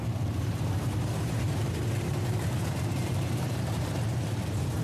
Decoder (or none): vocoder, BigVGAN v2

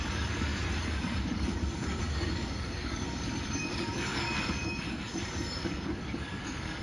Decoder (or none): codec, DAC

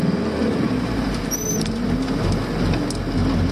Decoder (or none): none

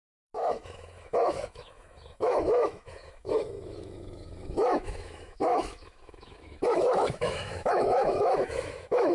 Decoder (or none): autoencoder, DAC-VAE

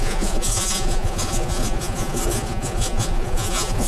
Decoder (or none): vocoder, Vocos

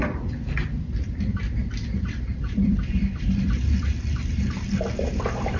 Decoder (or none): vocoder, BigVGAN v2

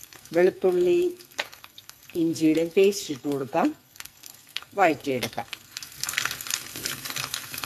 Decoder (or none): codec, SNAC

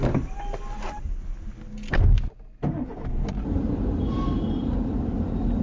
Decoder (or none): none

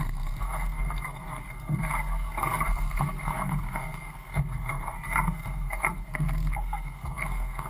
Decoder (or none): codec, SNAC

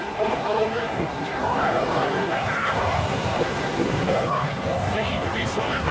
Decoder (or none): codec, SNAC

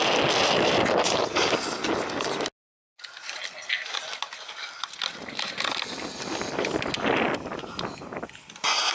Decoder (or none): none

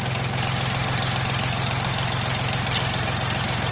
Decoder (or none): none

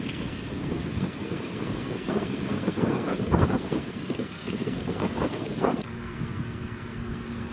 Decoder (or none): codec, SNAC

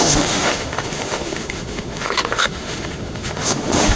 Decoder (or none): autoencoder, DAC-VAE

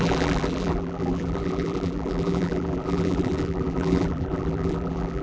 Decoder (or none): vocoder, BigVGAN v2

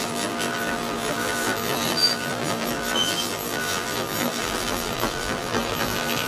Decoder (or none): vocoder, BigVGAN v2